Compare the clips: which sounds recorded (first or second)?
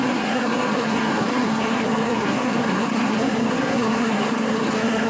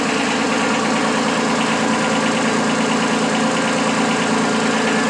second